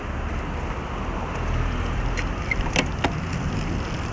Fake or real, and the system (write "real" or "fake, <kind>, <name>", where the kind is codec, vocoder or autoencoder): real